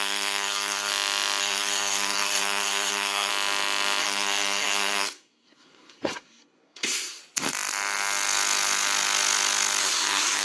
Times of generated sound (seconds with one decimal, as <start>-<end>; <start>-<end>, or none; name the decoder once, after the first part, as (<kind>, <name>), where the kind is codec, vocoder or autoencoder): 0.0-0.9 (codec, SNAC); 1.4-3.3; 4.0-7.2; 9.8-10.4